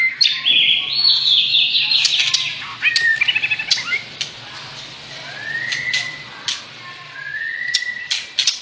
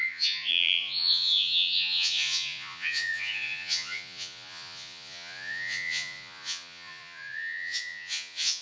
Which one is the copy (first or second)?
second